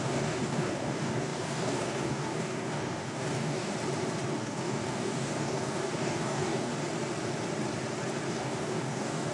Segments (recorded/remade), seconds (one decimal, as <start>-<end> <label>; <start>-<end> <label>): 0.0-3.7 remade; 3.7-4.4 recorded; 4.4-6.7 remade; 6.7-8.3 recorded; 8.3-9.3 remade